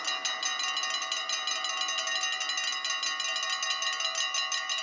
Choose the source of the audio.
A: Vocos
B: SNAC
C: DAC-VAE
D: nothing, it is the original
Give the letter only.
D